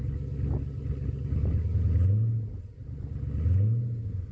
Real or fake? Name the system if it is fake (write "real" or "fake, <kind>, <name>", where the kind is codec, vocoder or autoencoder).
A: real